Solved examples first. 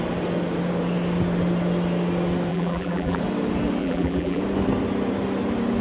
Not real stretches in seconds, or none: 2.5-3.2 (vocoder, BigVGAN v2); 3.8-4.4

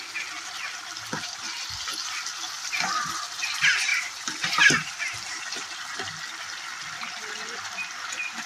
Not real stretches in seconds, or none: 3.9-5.4 (vocoder, BigVGAN v2)

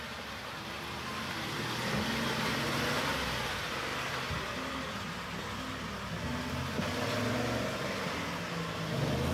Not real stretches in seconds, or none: none

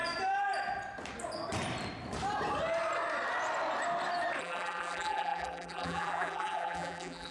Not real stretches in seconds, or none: 4.4-7.3 (vocoder, BigVGAN v2)